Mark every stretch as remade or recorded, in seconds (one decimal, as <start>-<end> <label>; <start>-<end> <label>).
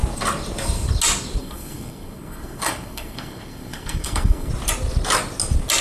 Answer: 0.0-1.4 recorded; 1.4-4.5 remade; 4.5-5.8 recorded